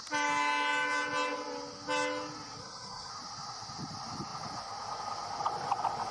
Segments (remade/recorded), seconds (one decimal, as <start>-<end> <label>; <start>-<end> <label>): 0.0-2.6 recorded; 2.6-3.1 remade; 3.1-6.1 recorded